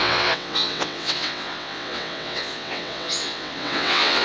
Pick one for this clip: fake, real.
fake